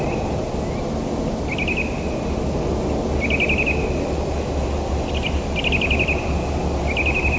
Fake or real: real